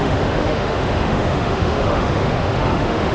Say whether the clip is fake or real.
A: fake